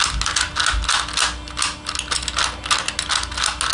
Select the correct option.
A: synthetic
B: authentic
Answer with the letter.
B